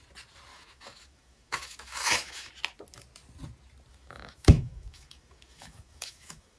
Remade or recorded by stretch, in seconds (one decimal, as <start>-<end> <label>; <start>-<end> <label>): 0.0-0.5 recorded; 0.5-2.5 remade; 2.5-3.9 recorded; 3.9-6.6 remade